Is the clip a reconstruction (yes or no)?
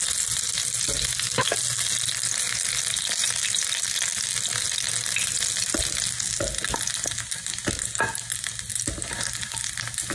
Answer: no